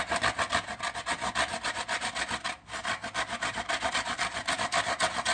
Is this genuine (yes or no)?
yes